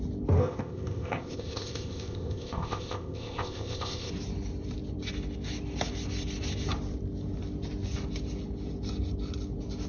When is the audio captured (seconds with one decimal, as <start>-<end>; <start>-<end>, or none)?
0.0-0.4; 4.1-9.9